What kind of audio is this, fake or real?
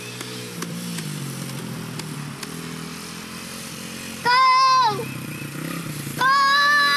real